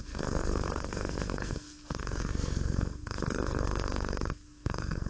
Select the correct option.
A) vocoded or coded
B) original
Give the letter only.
A